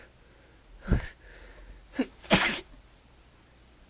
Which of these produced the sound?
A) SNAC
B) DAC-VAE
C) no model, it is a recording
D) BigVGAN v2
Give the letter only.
C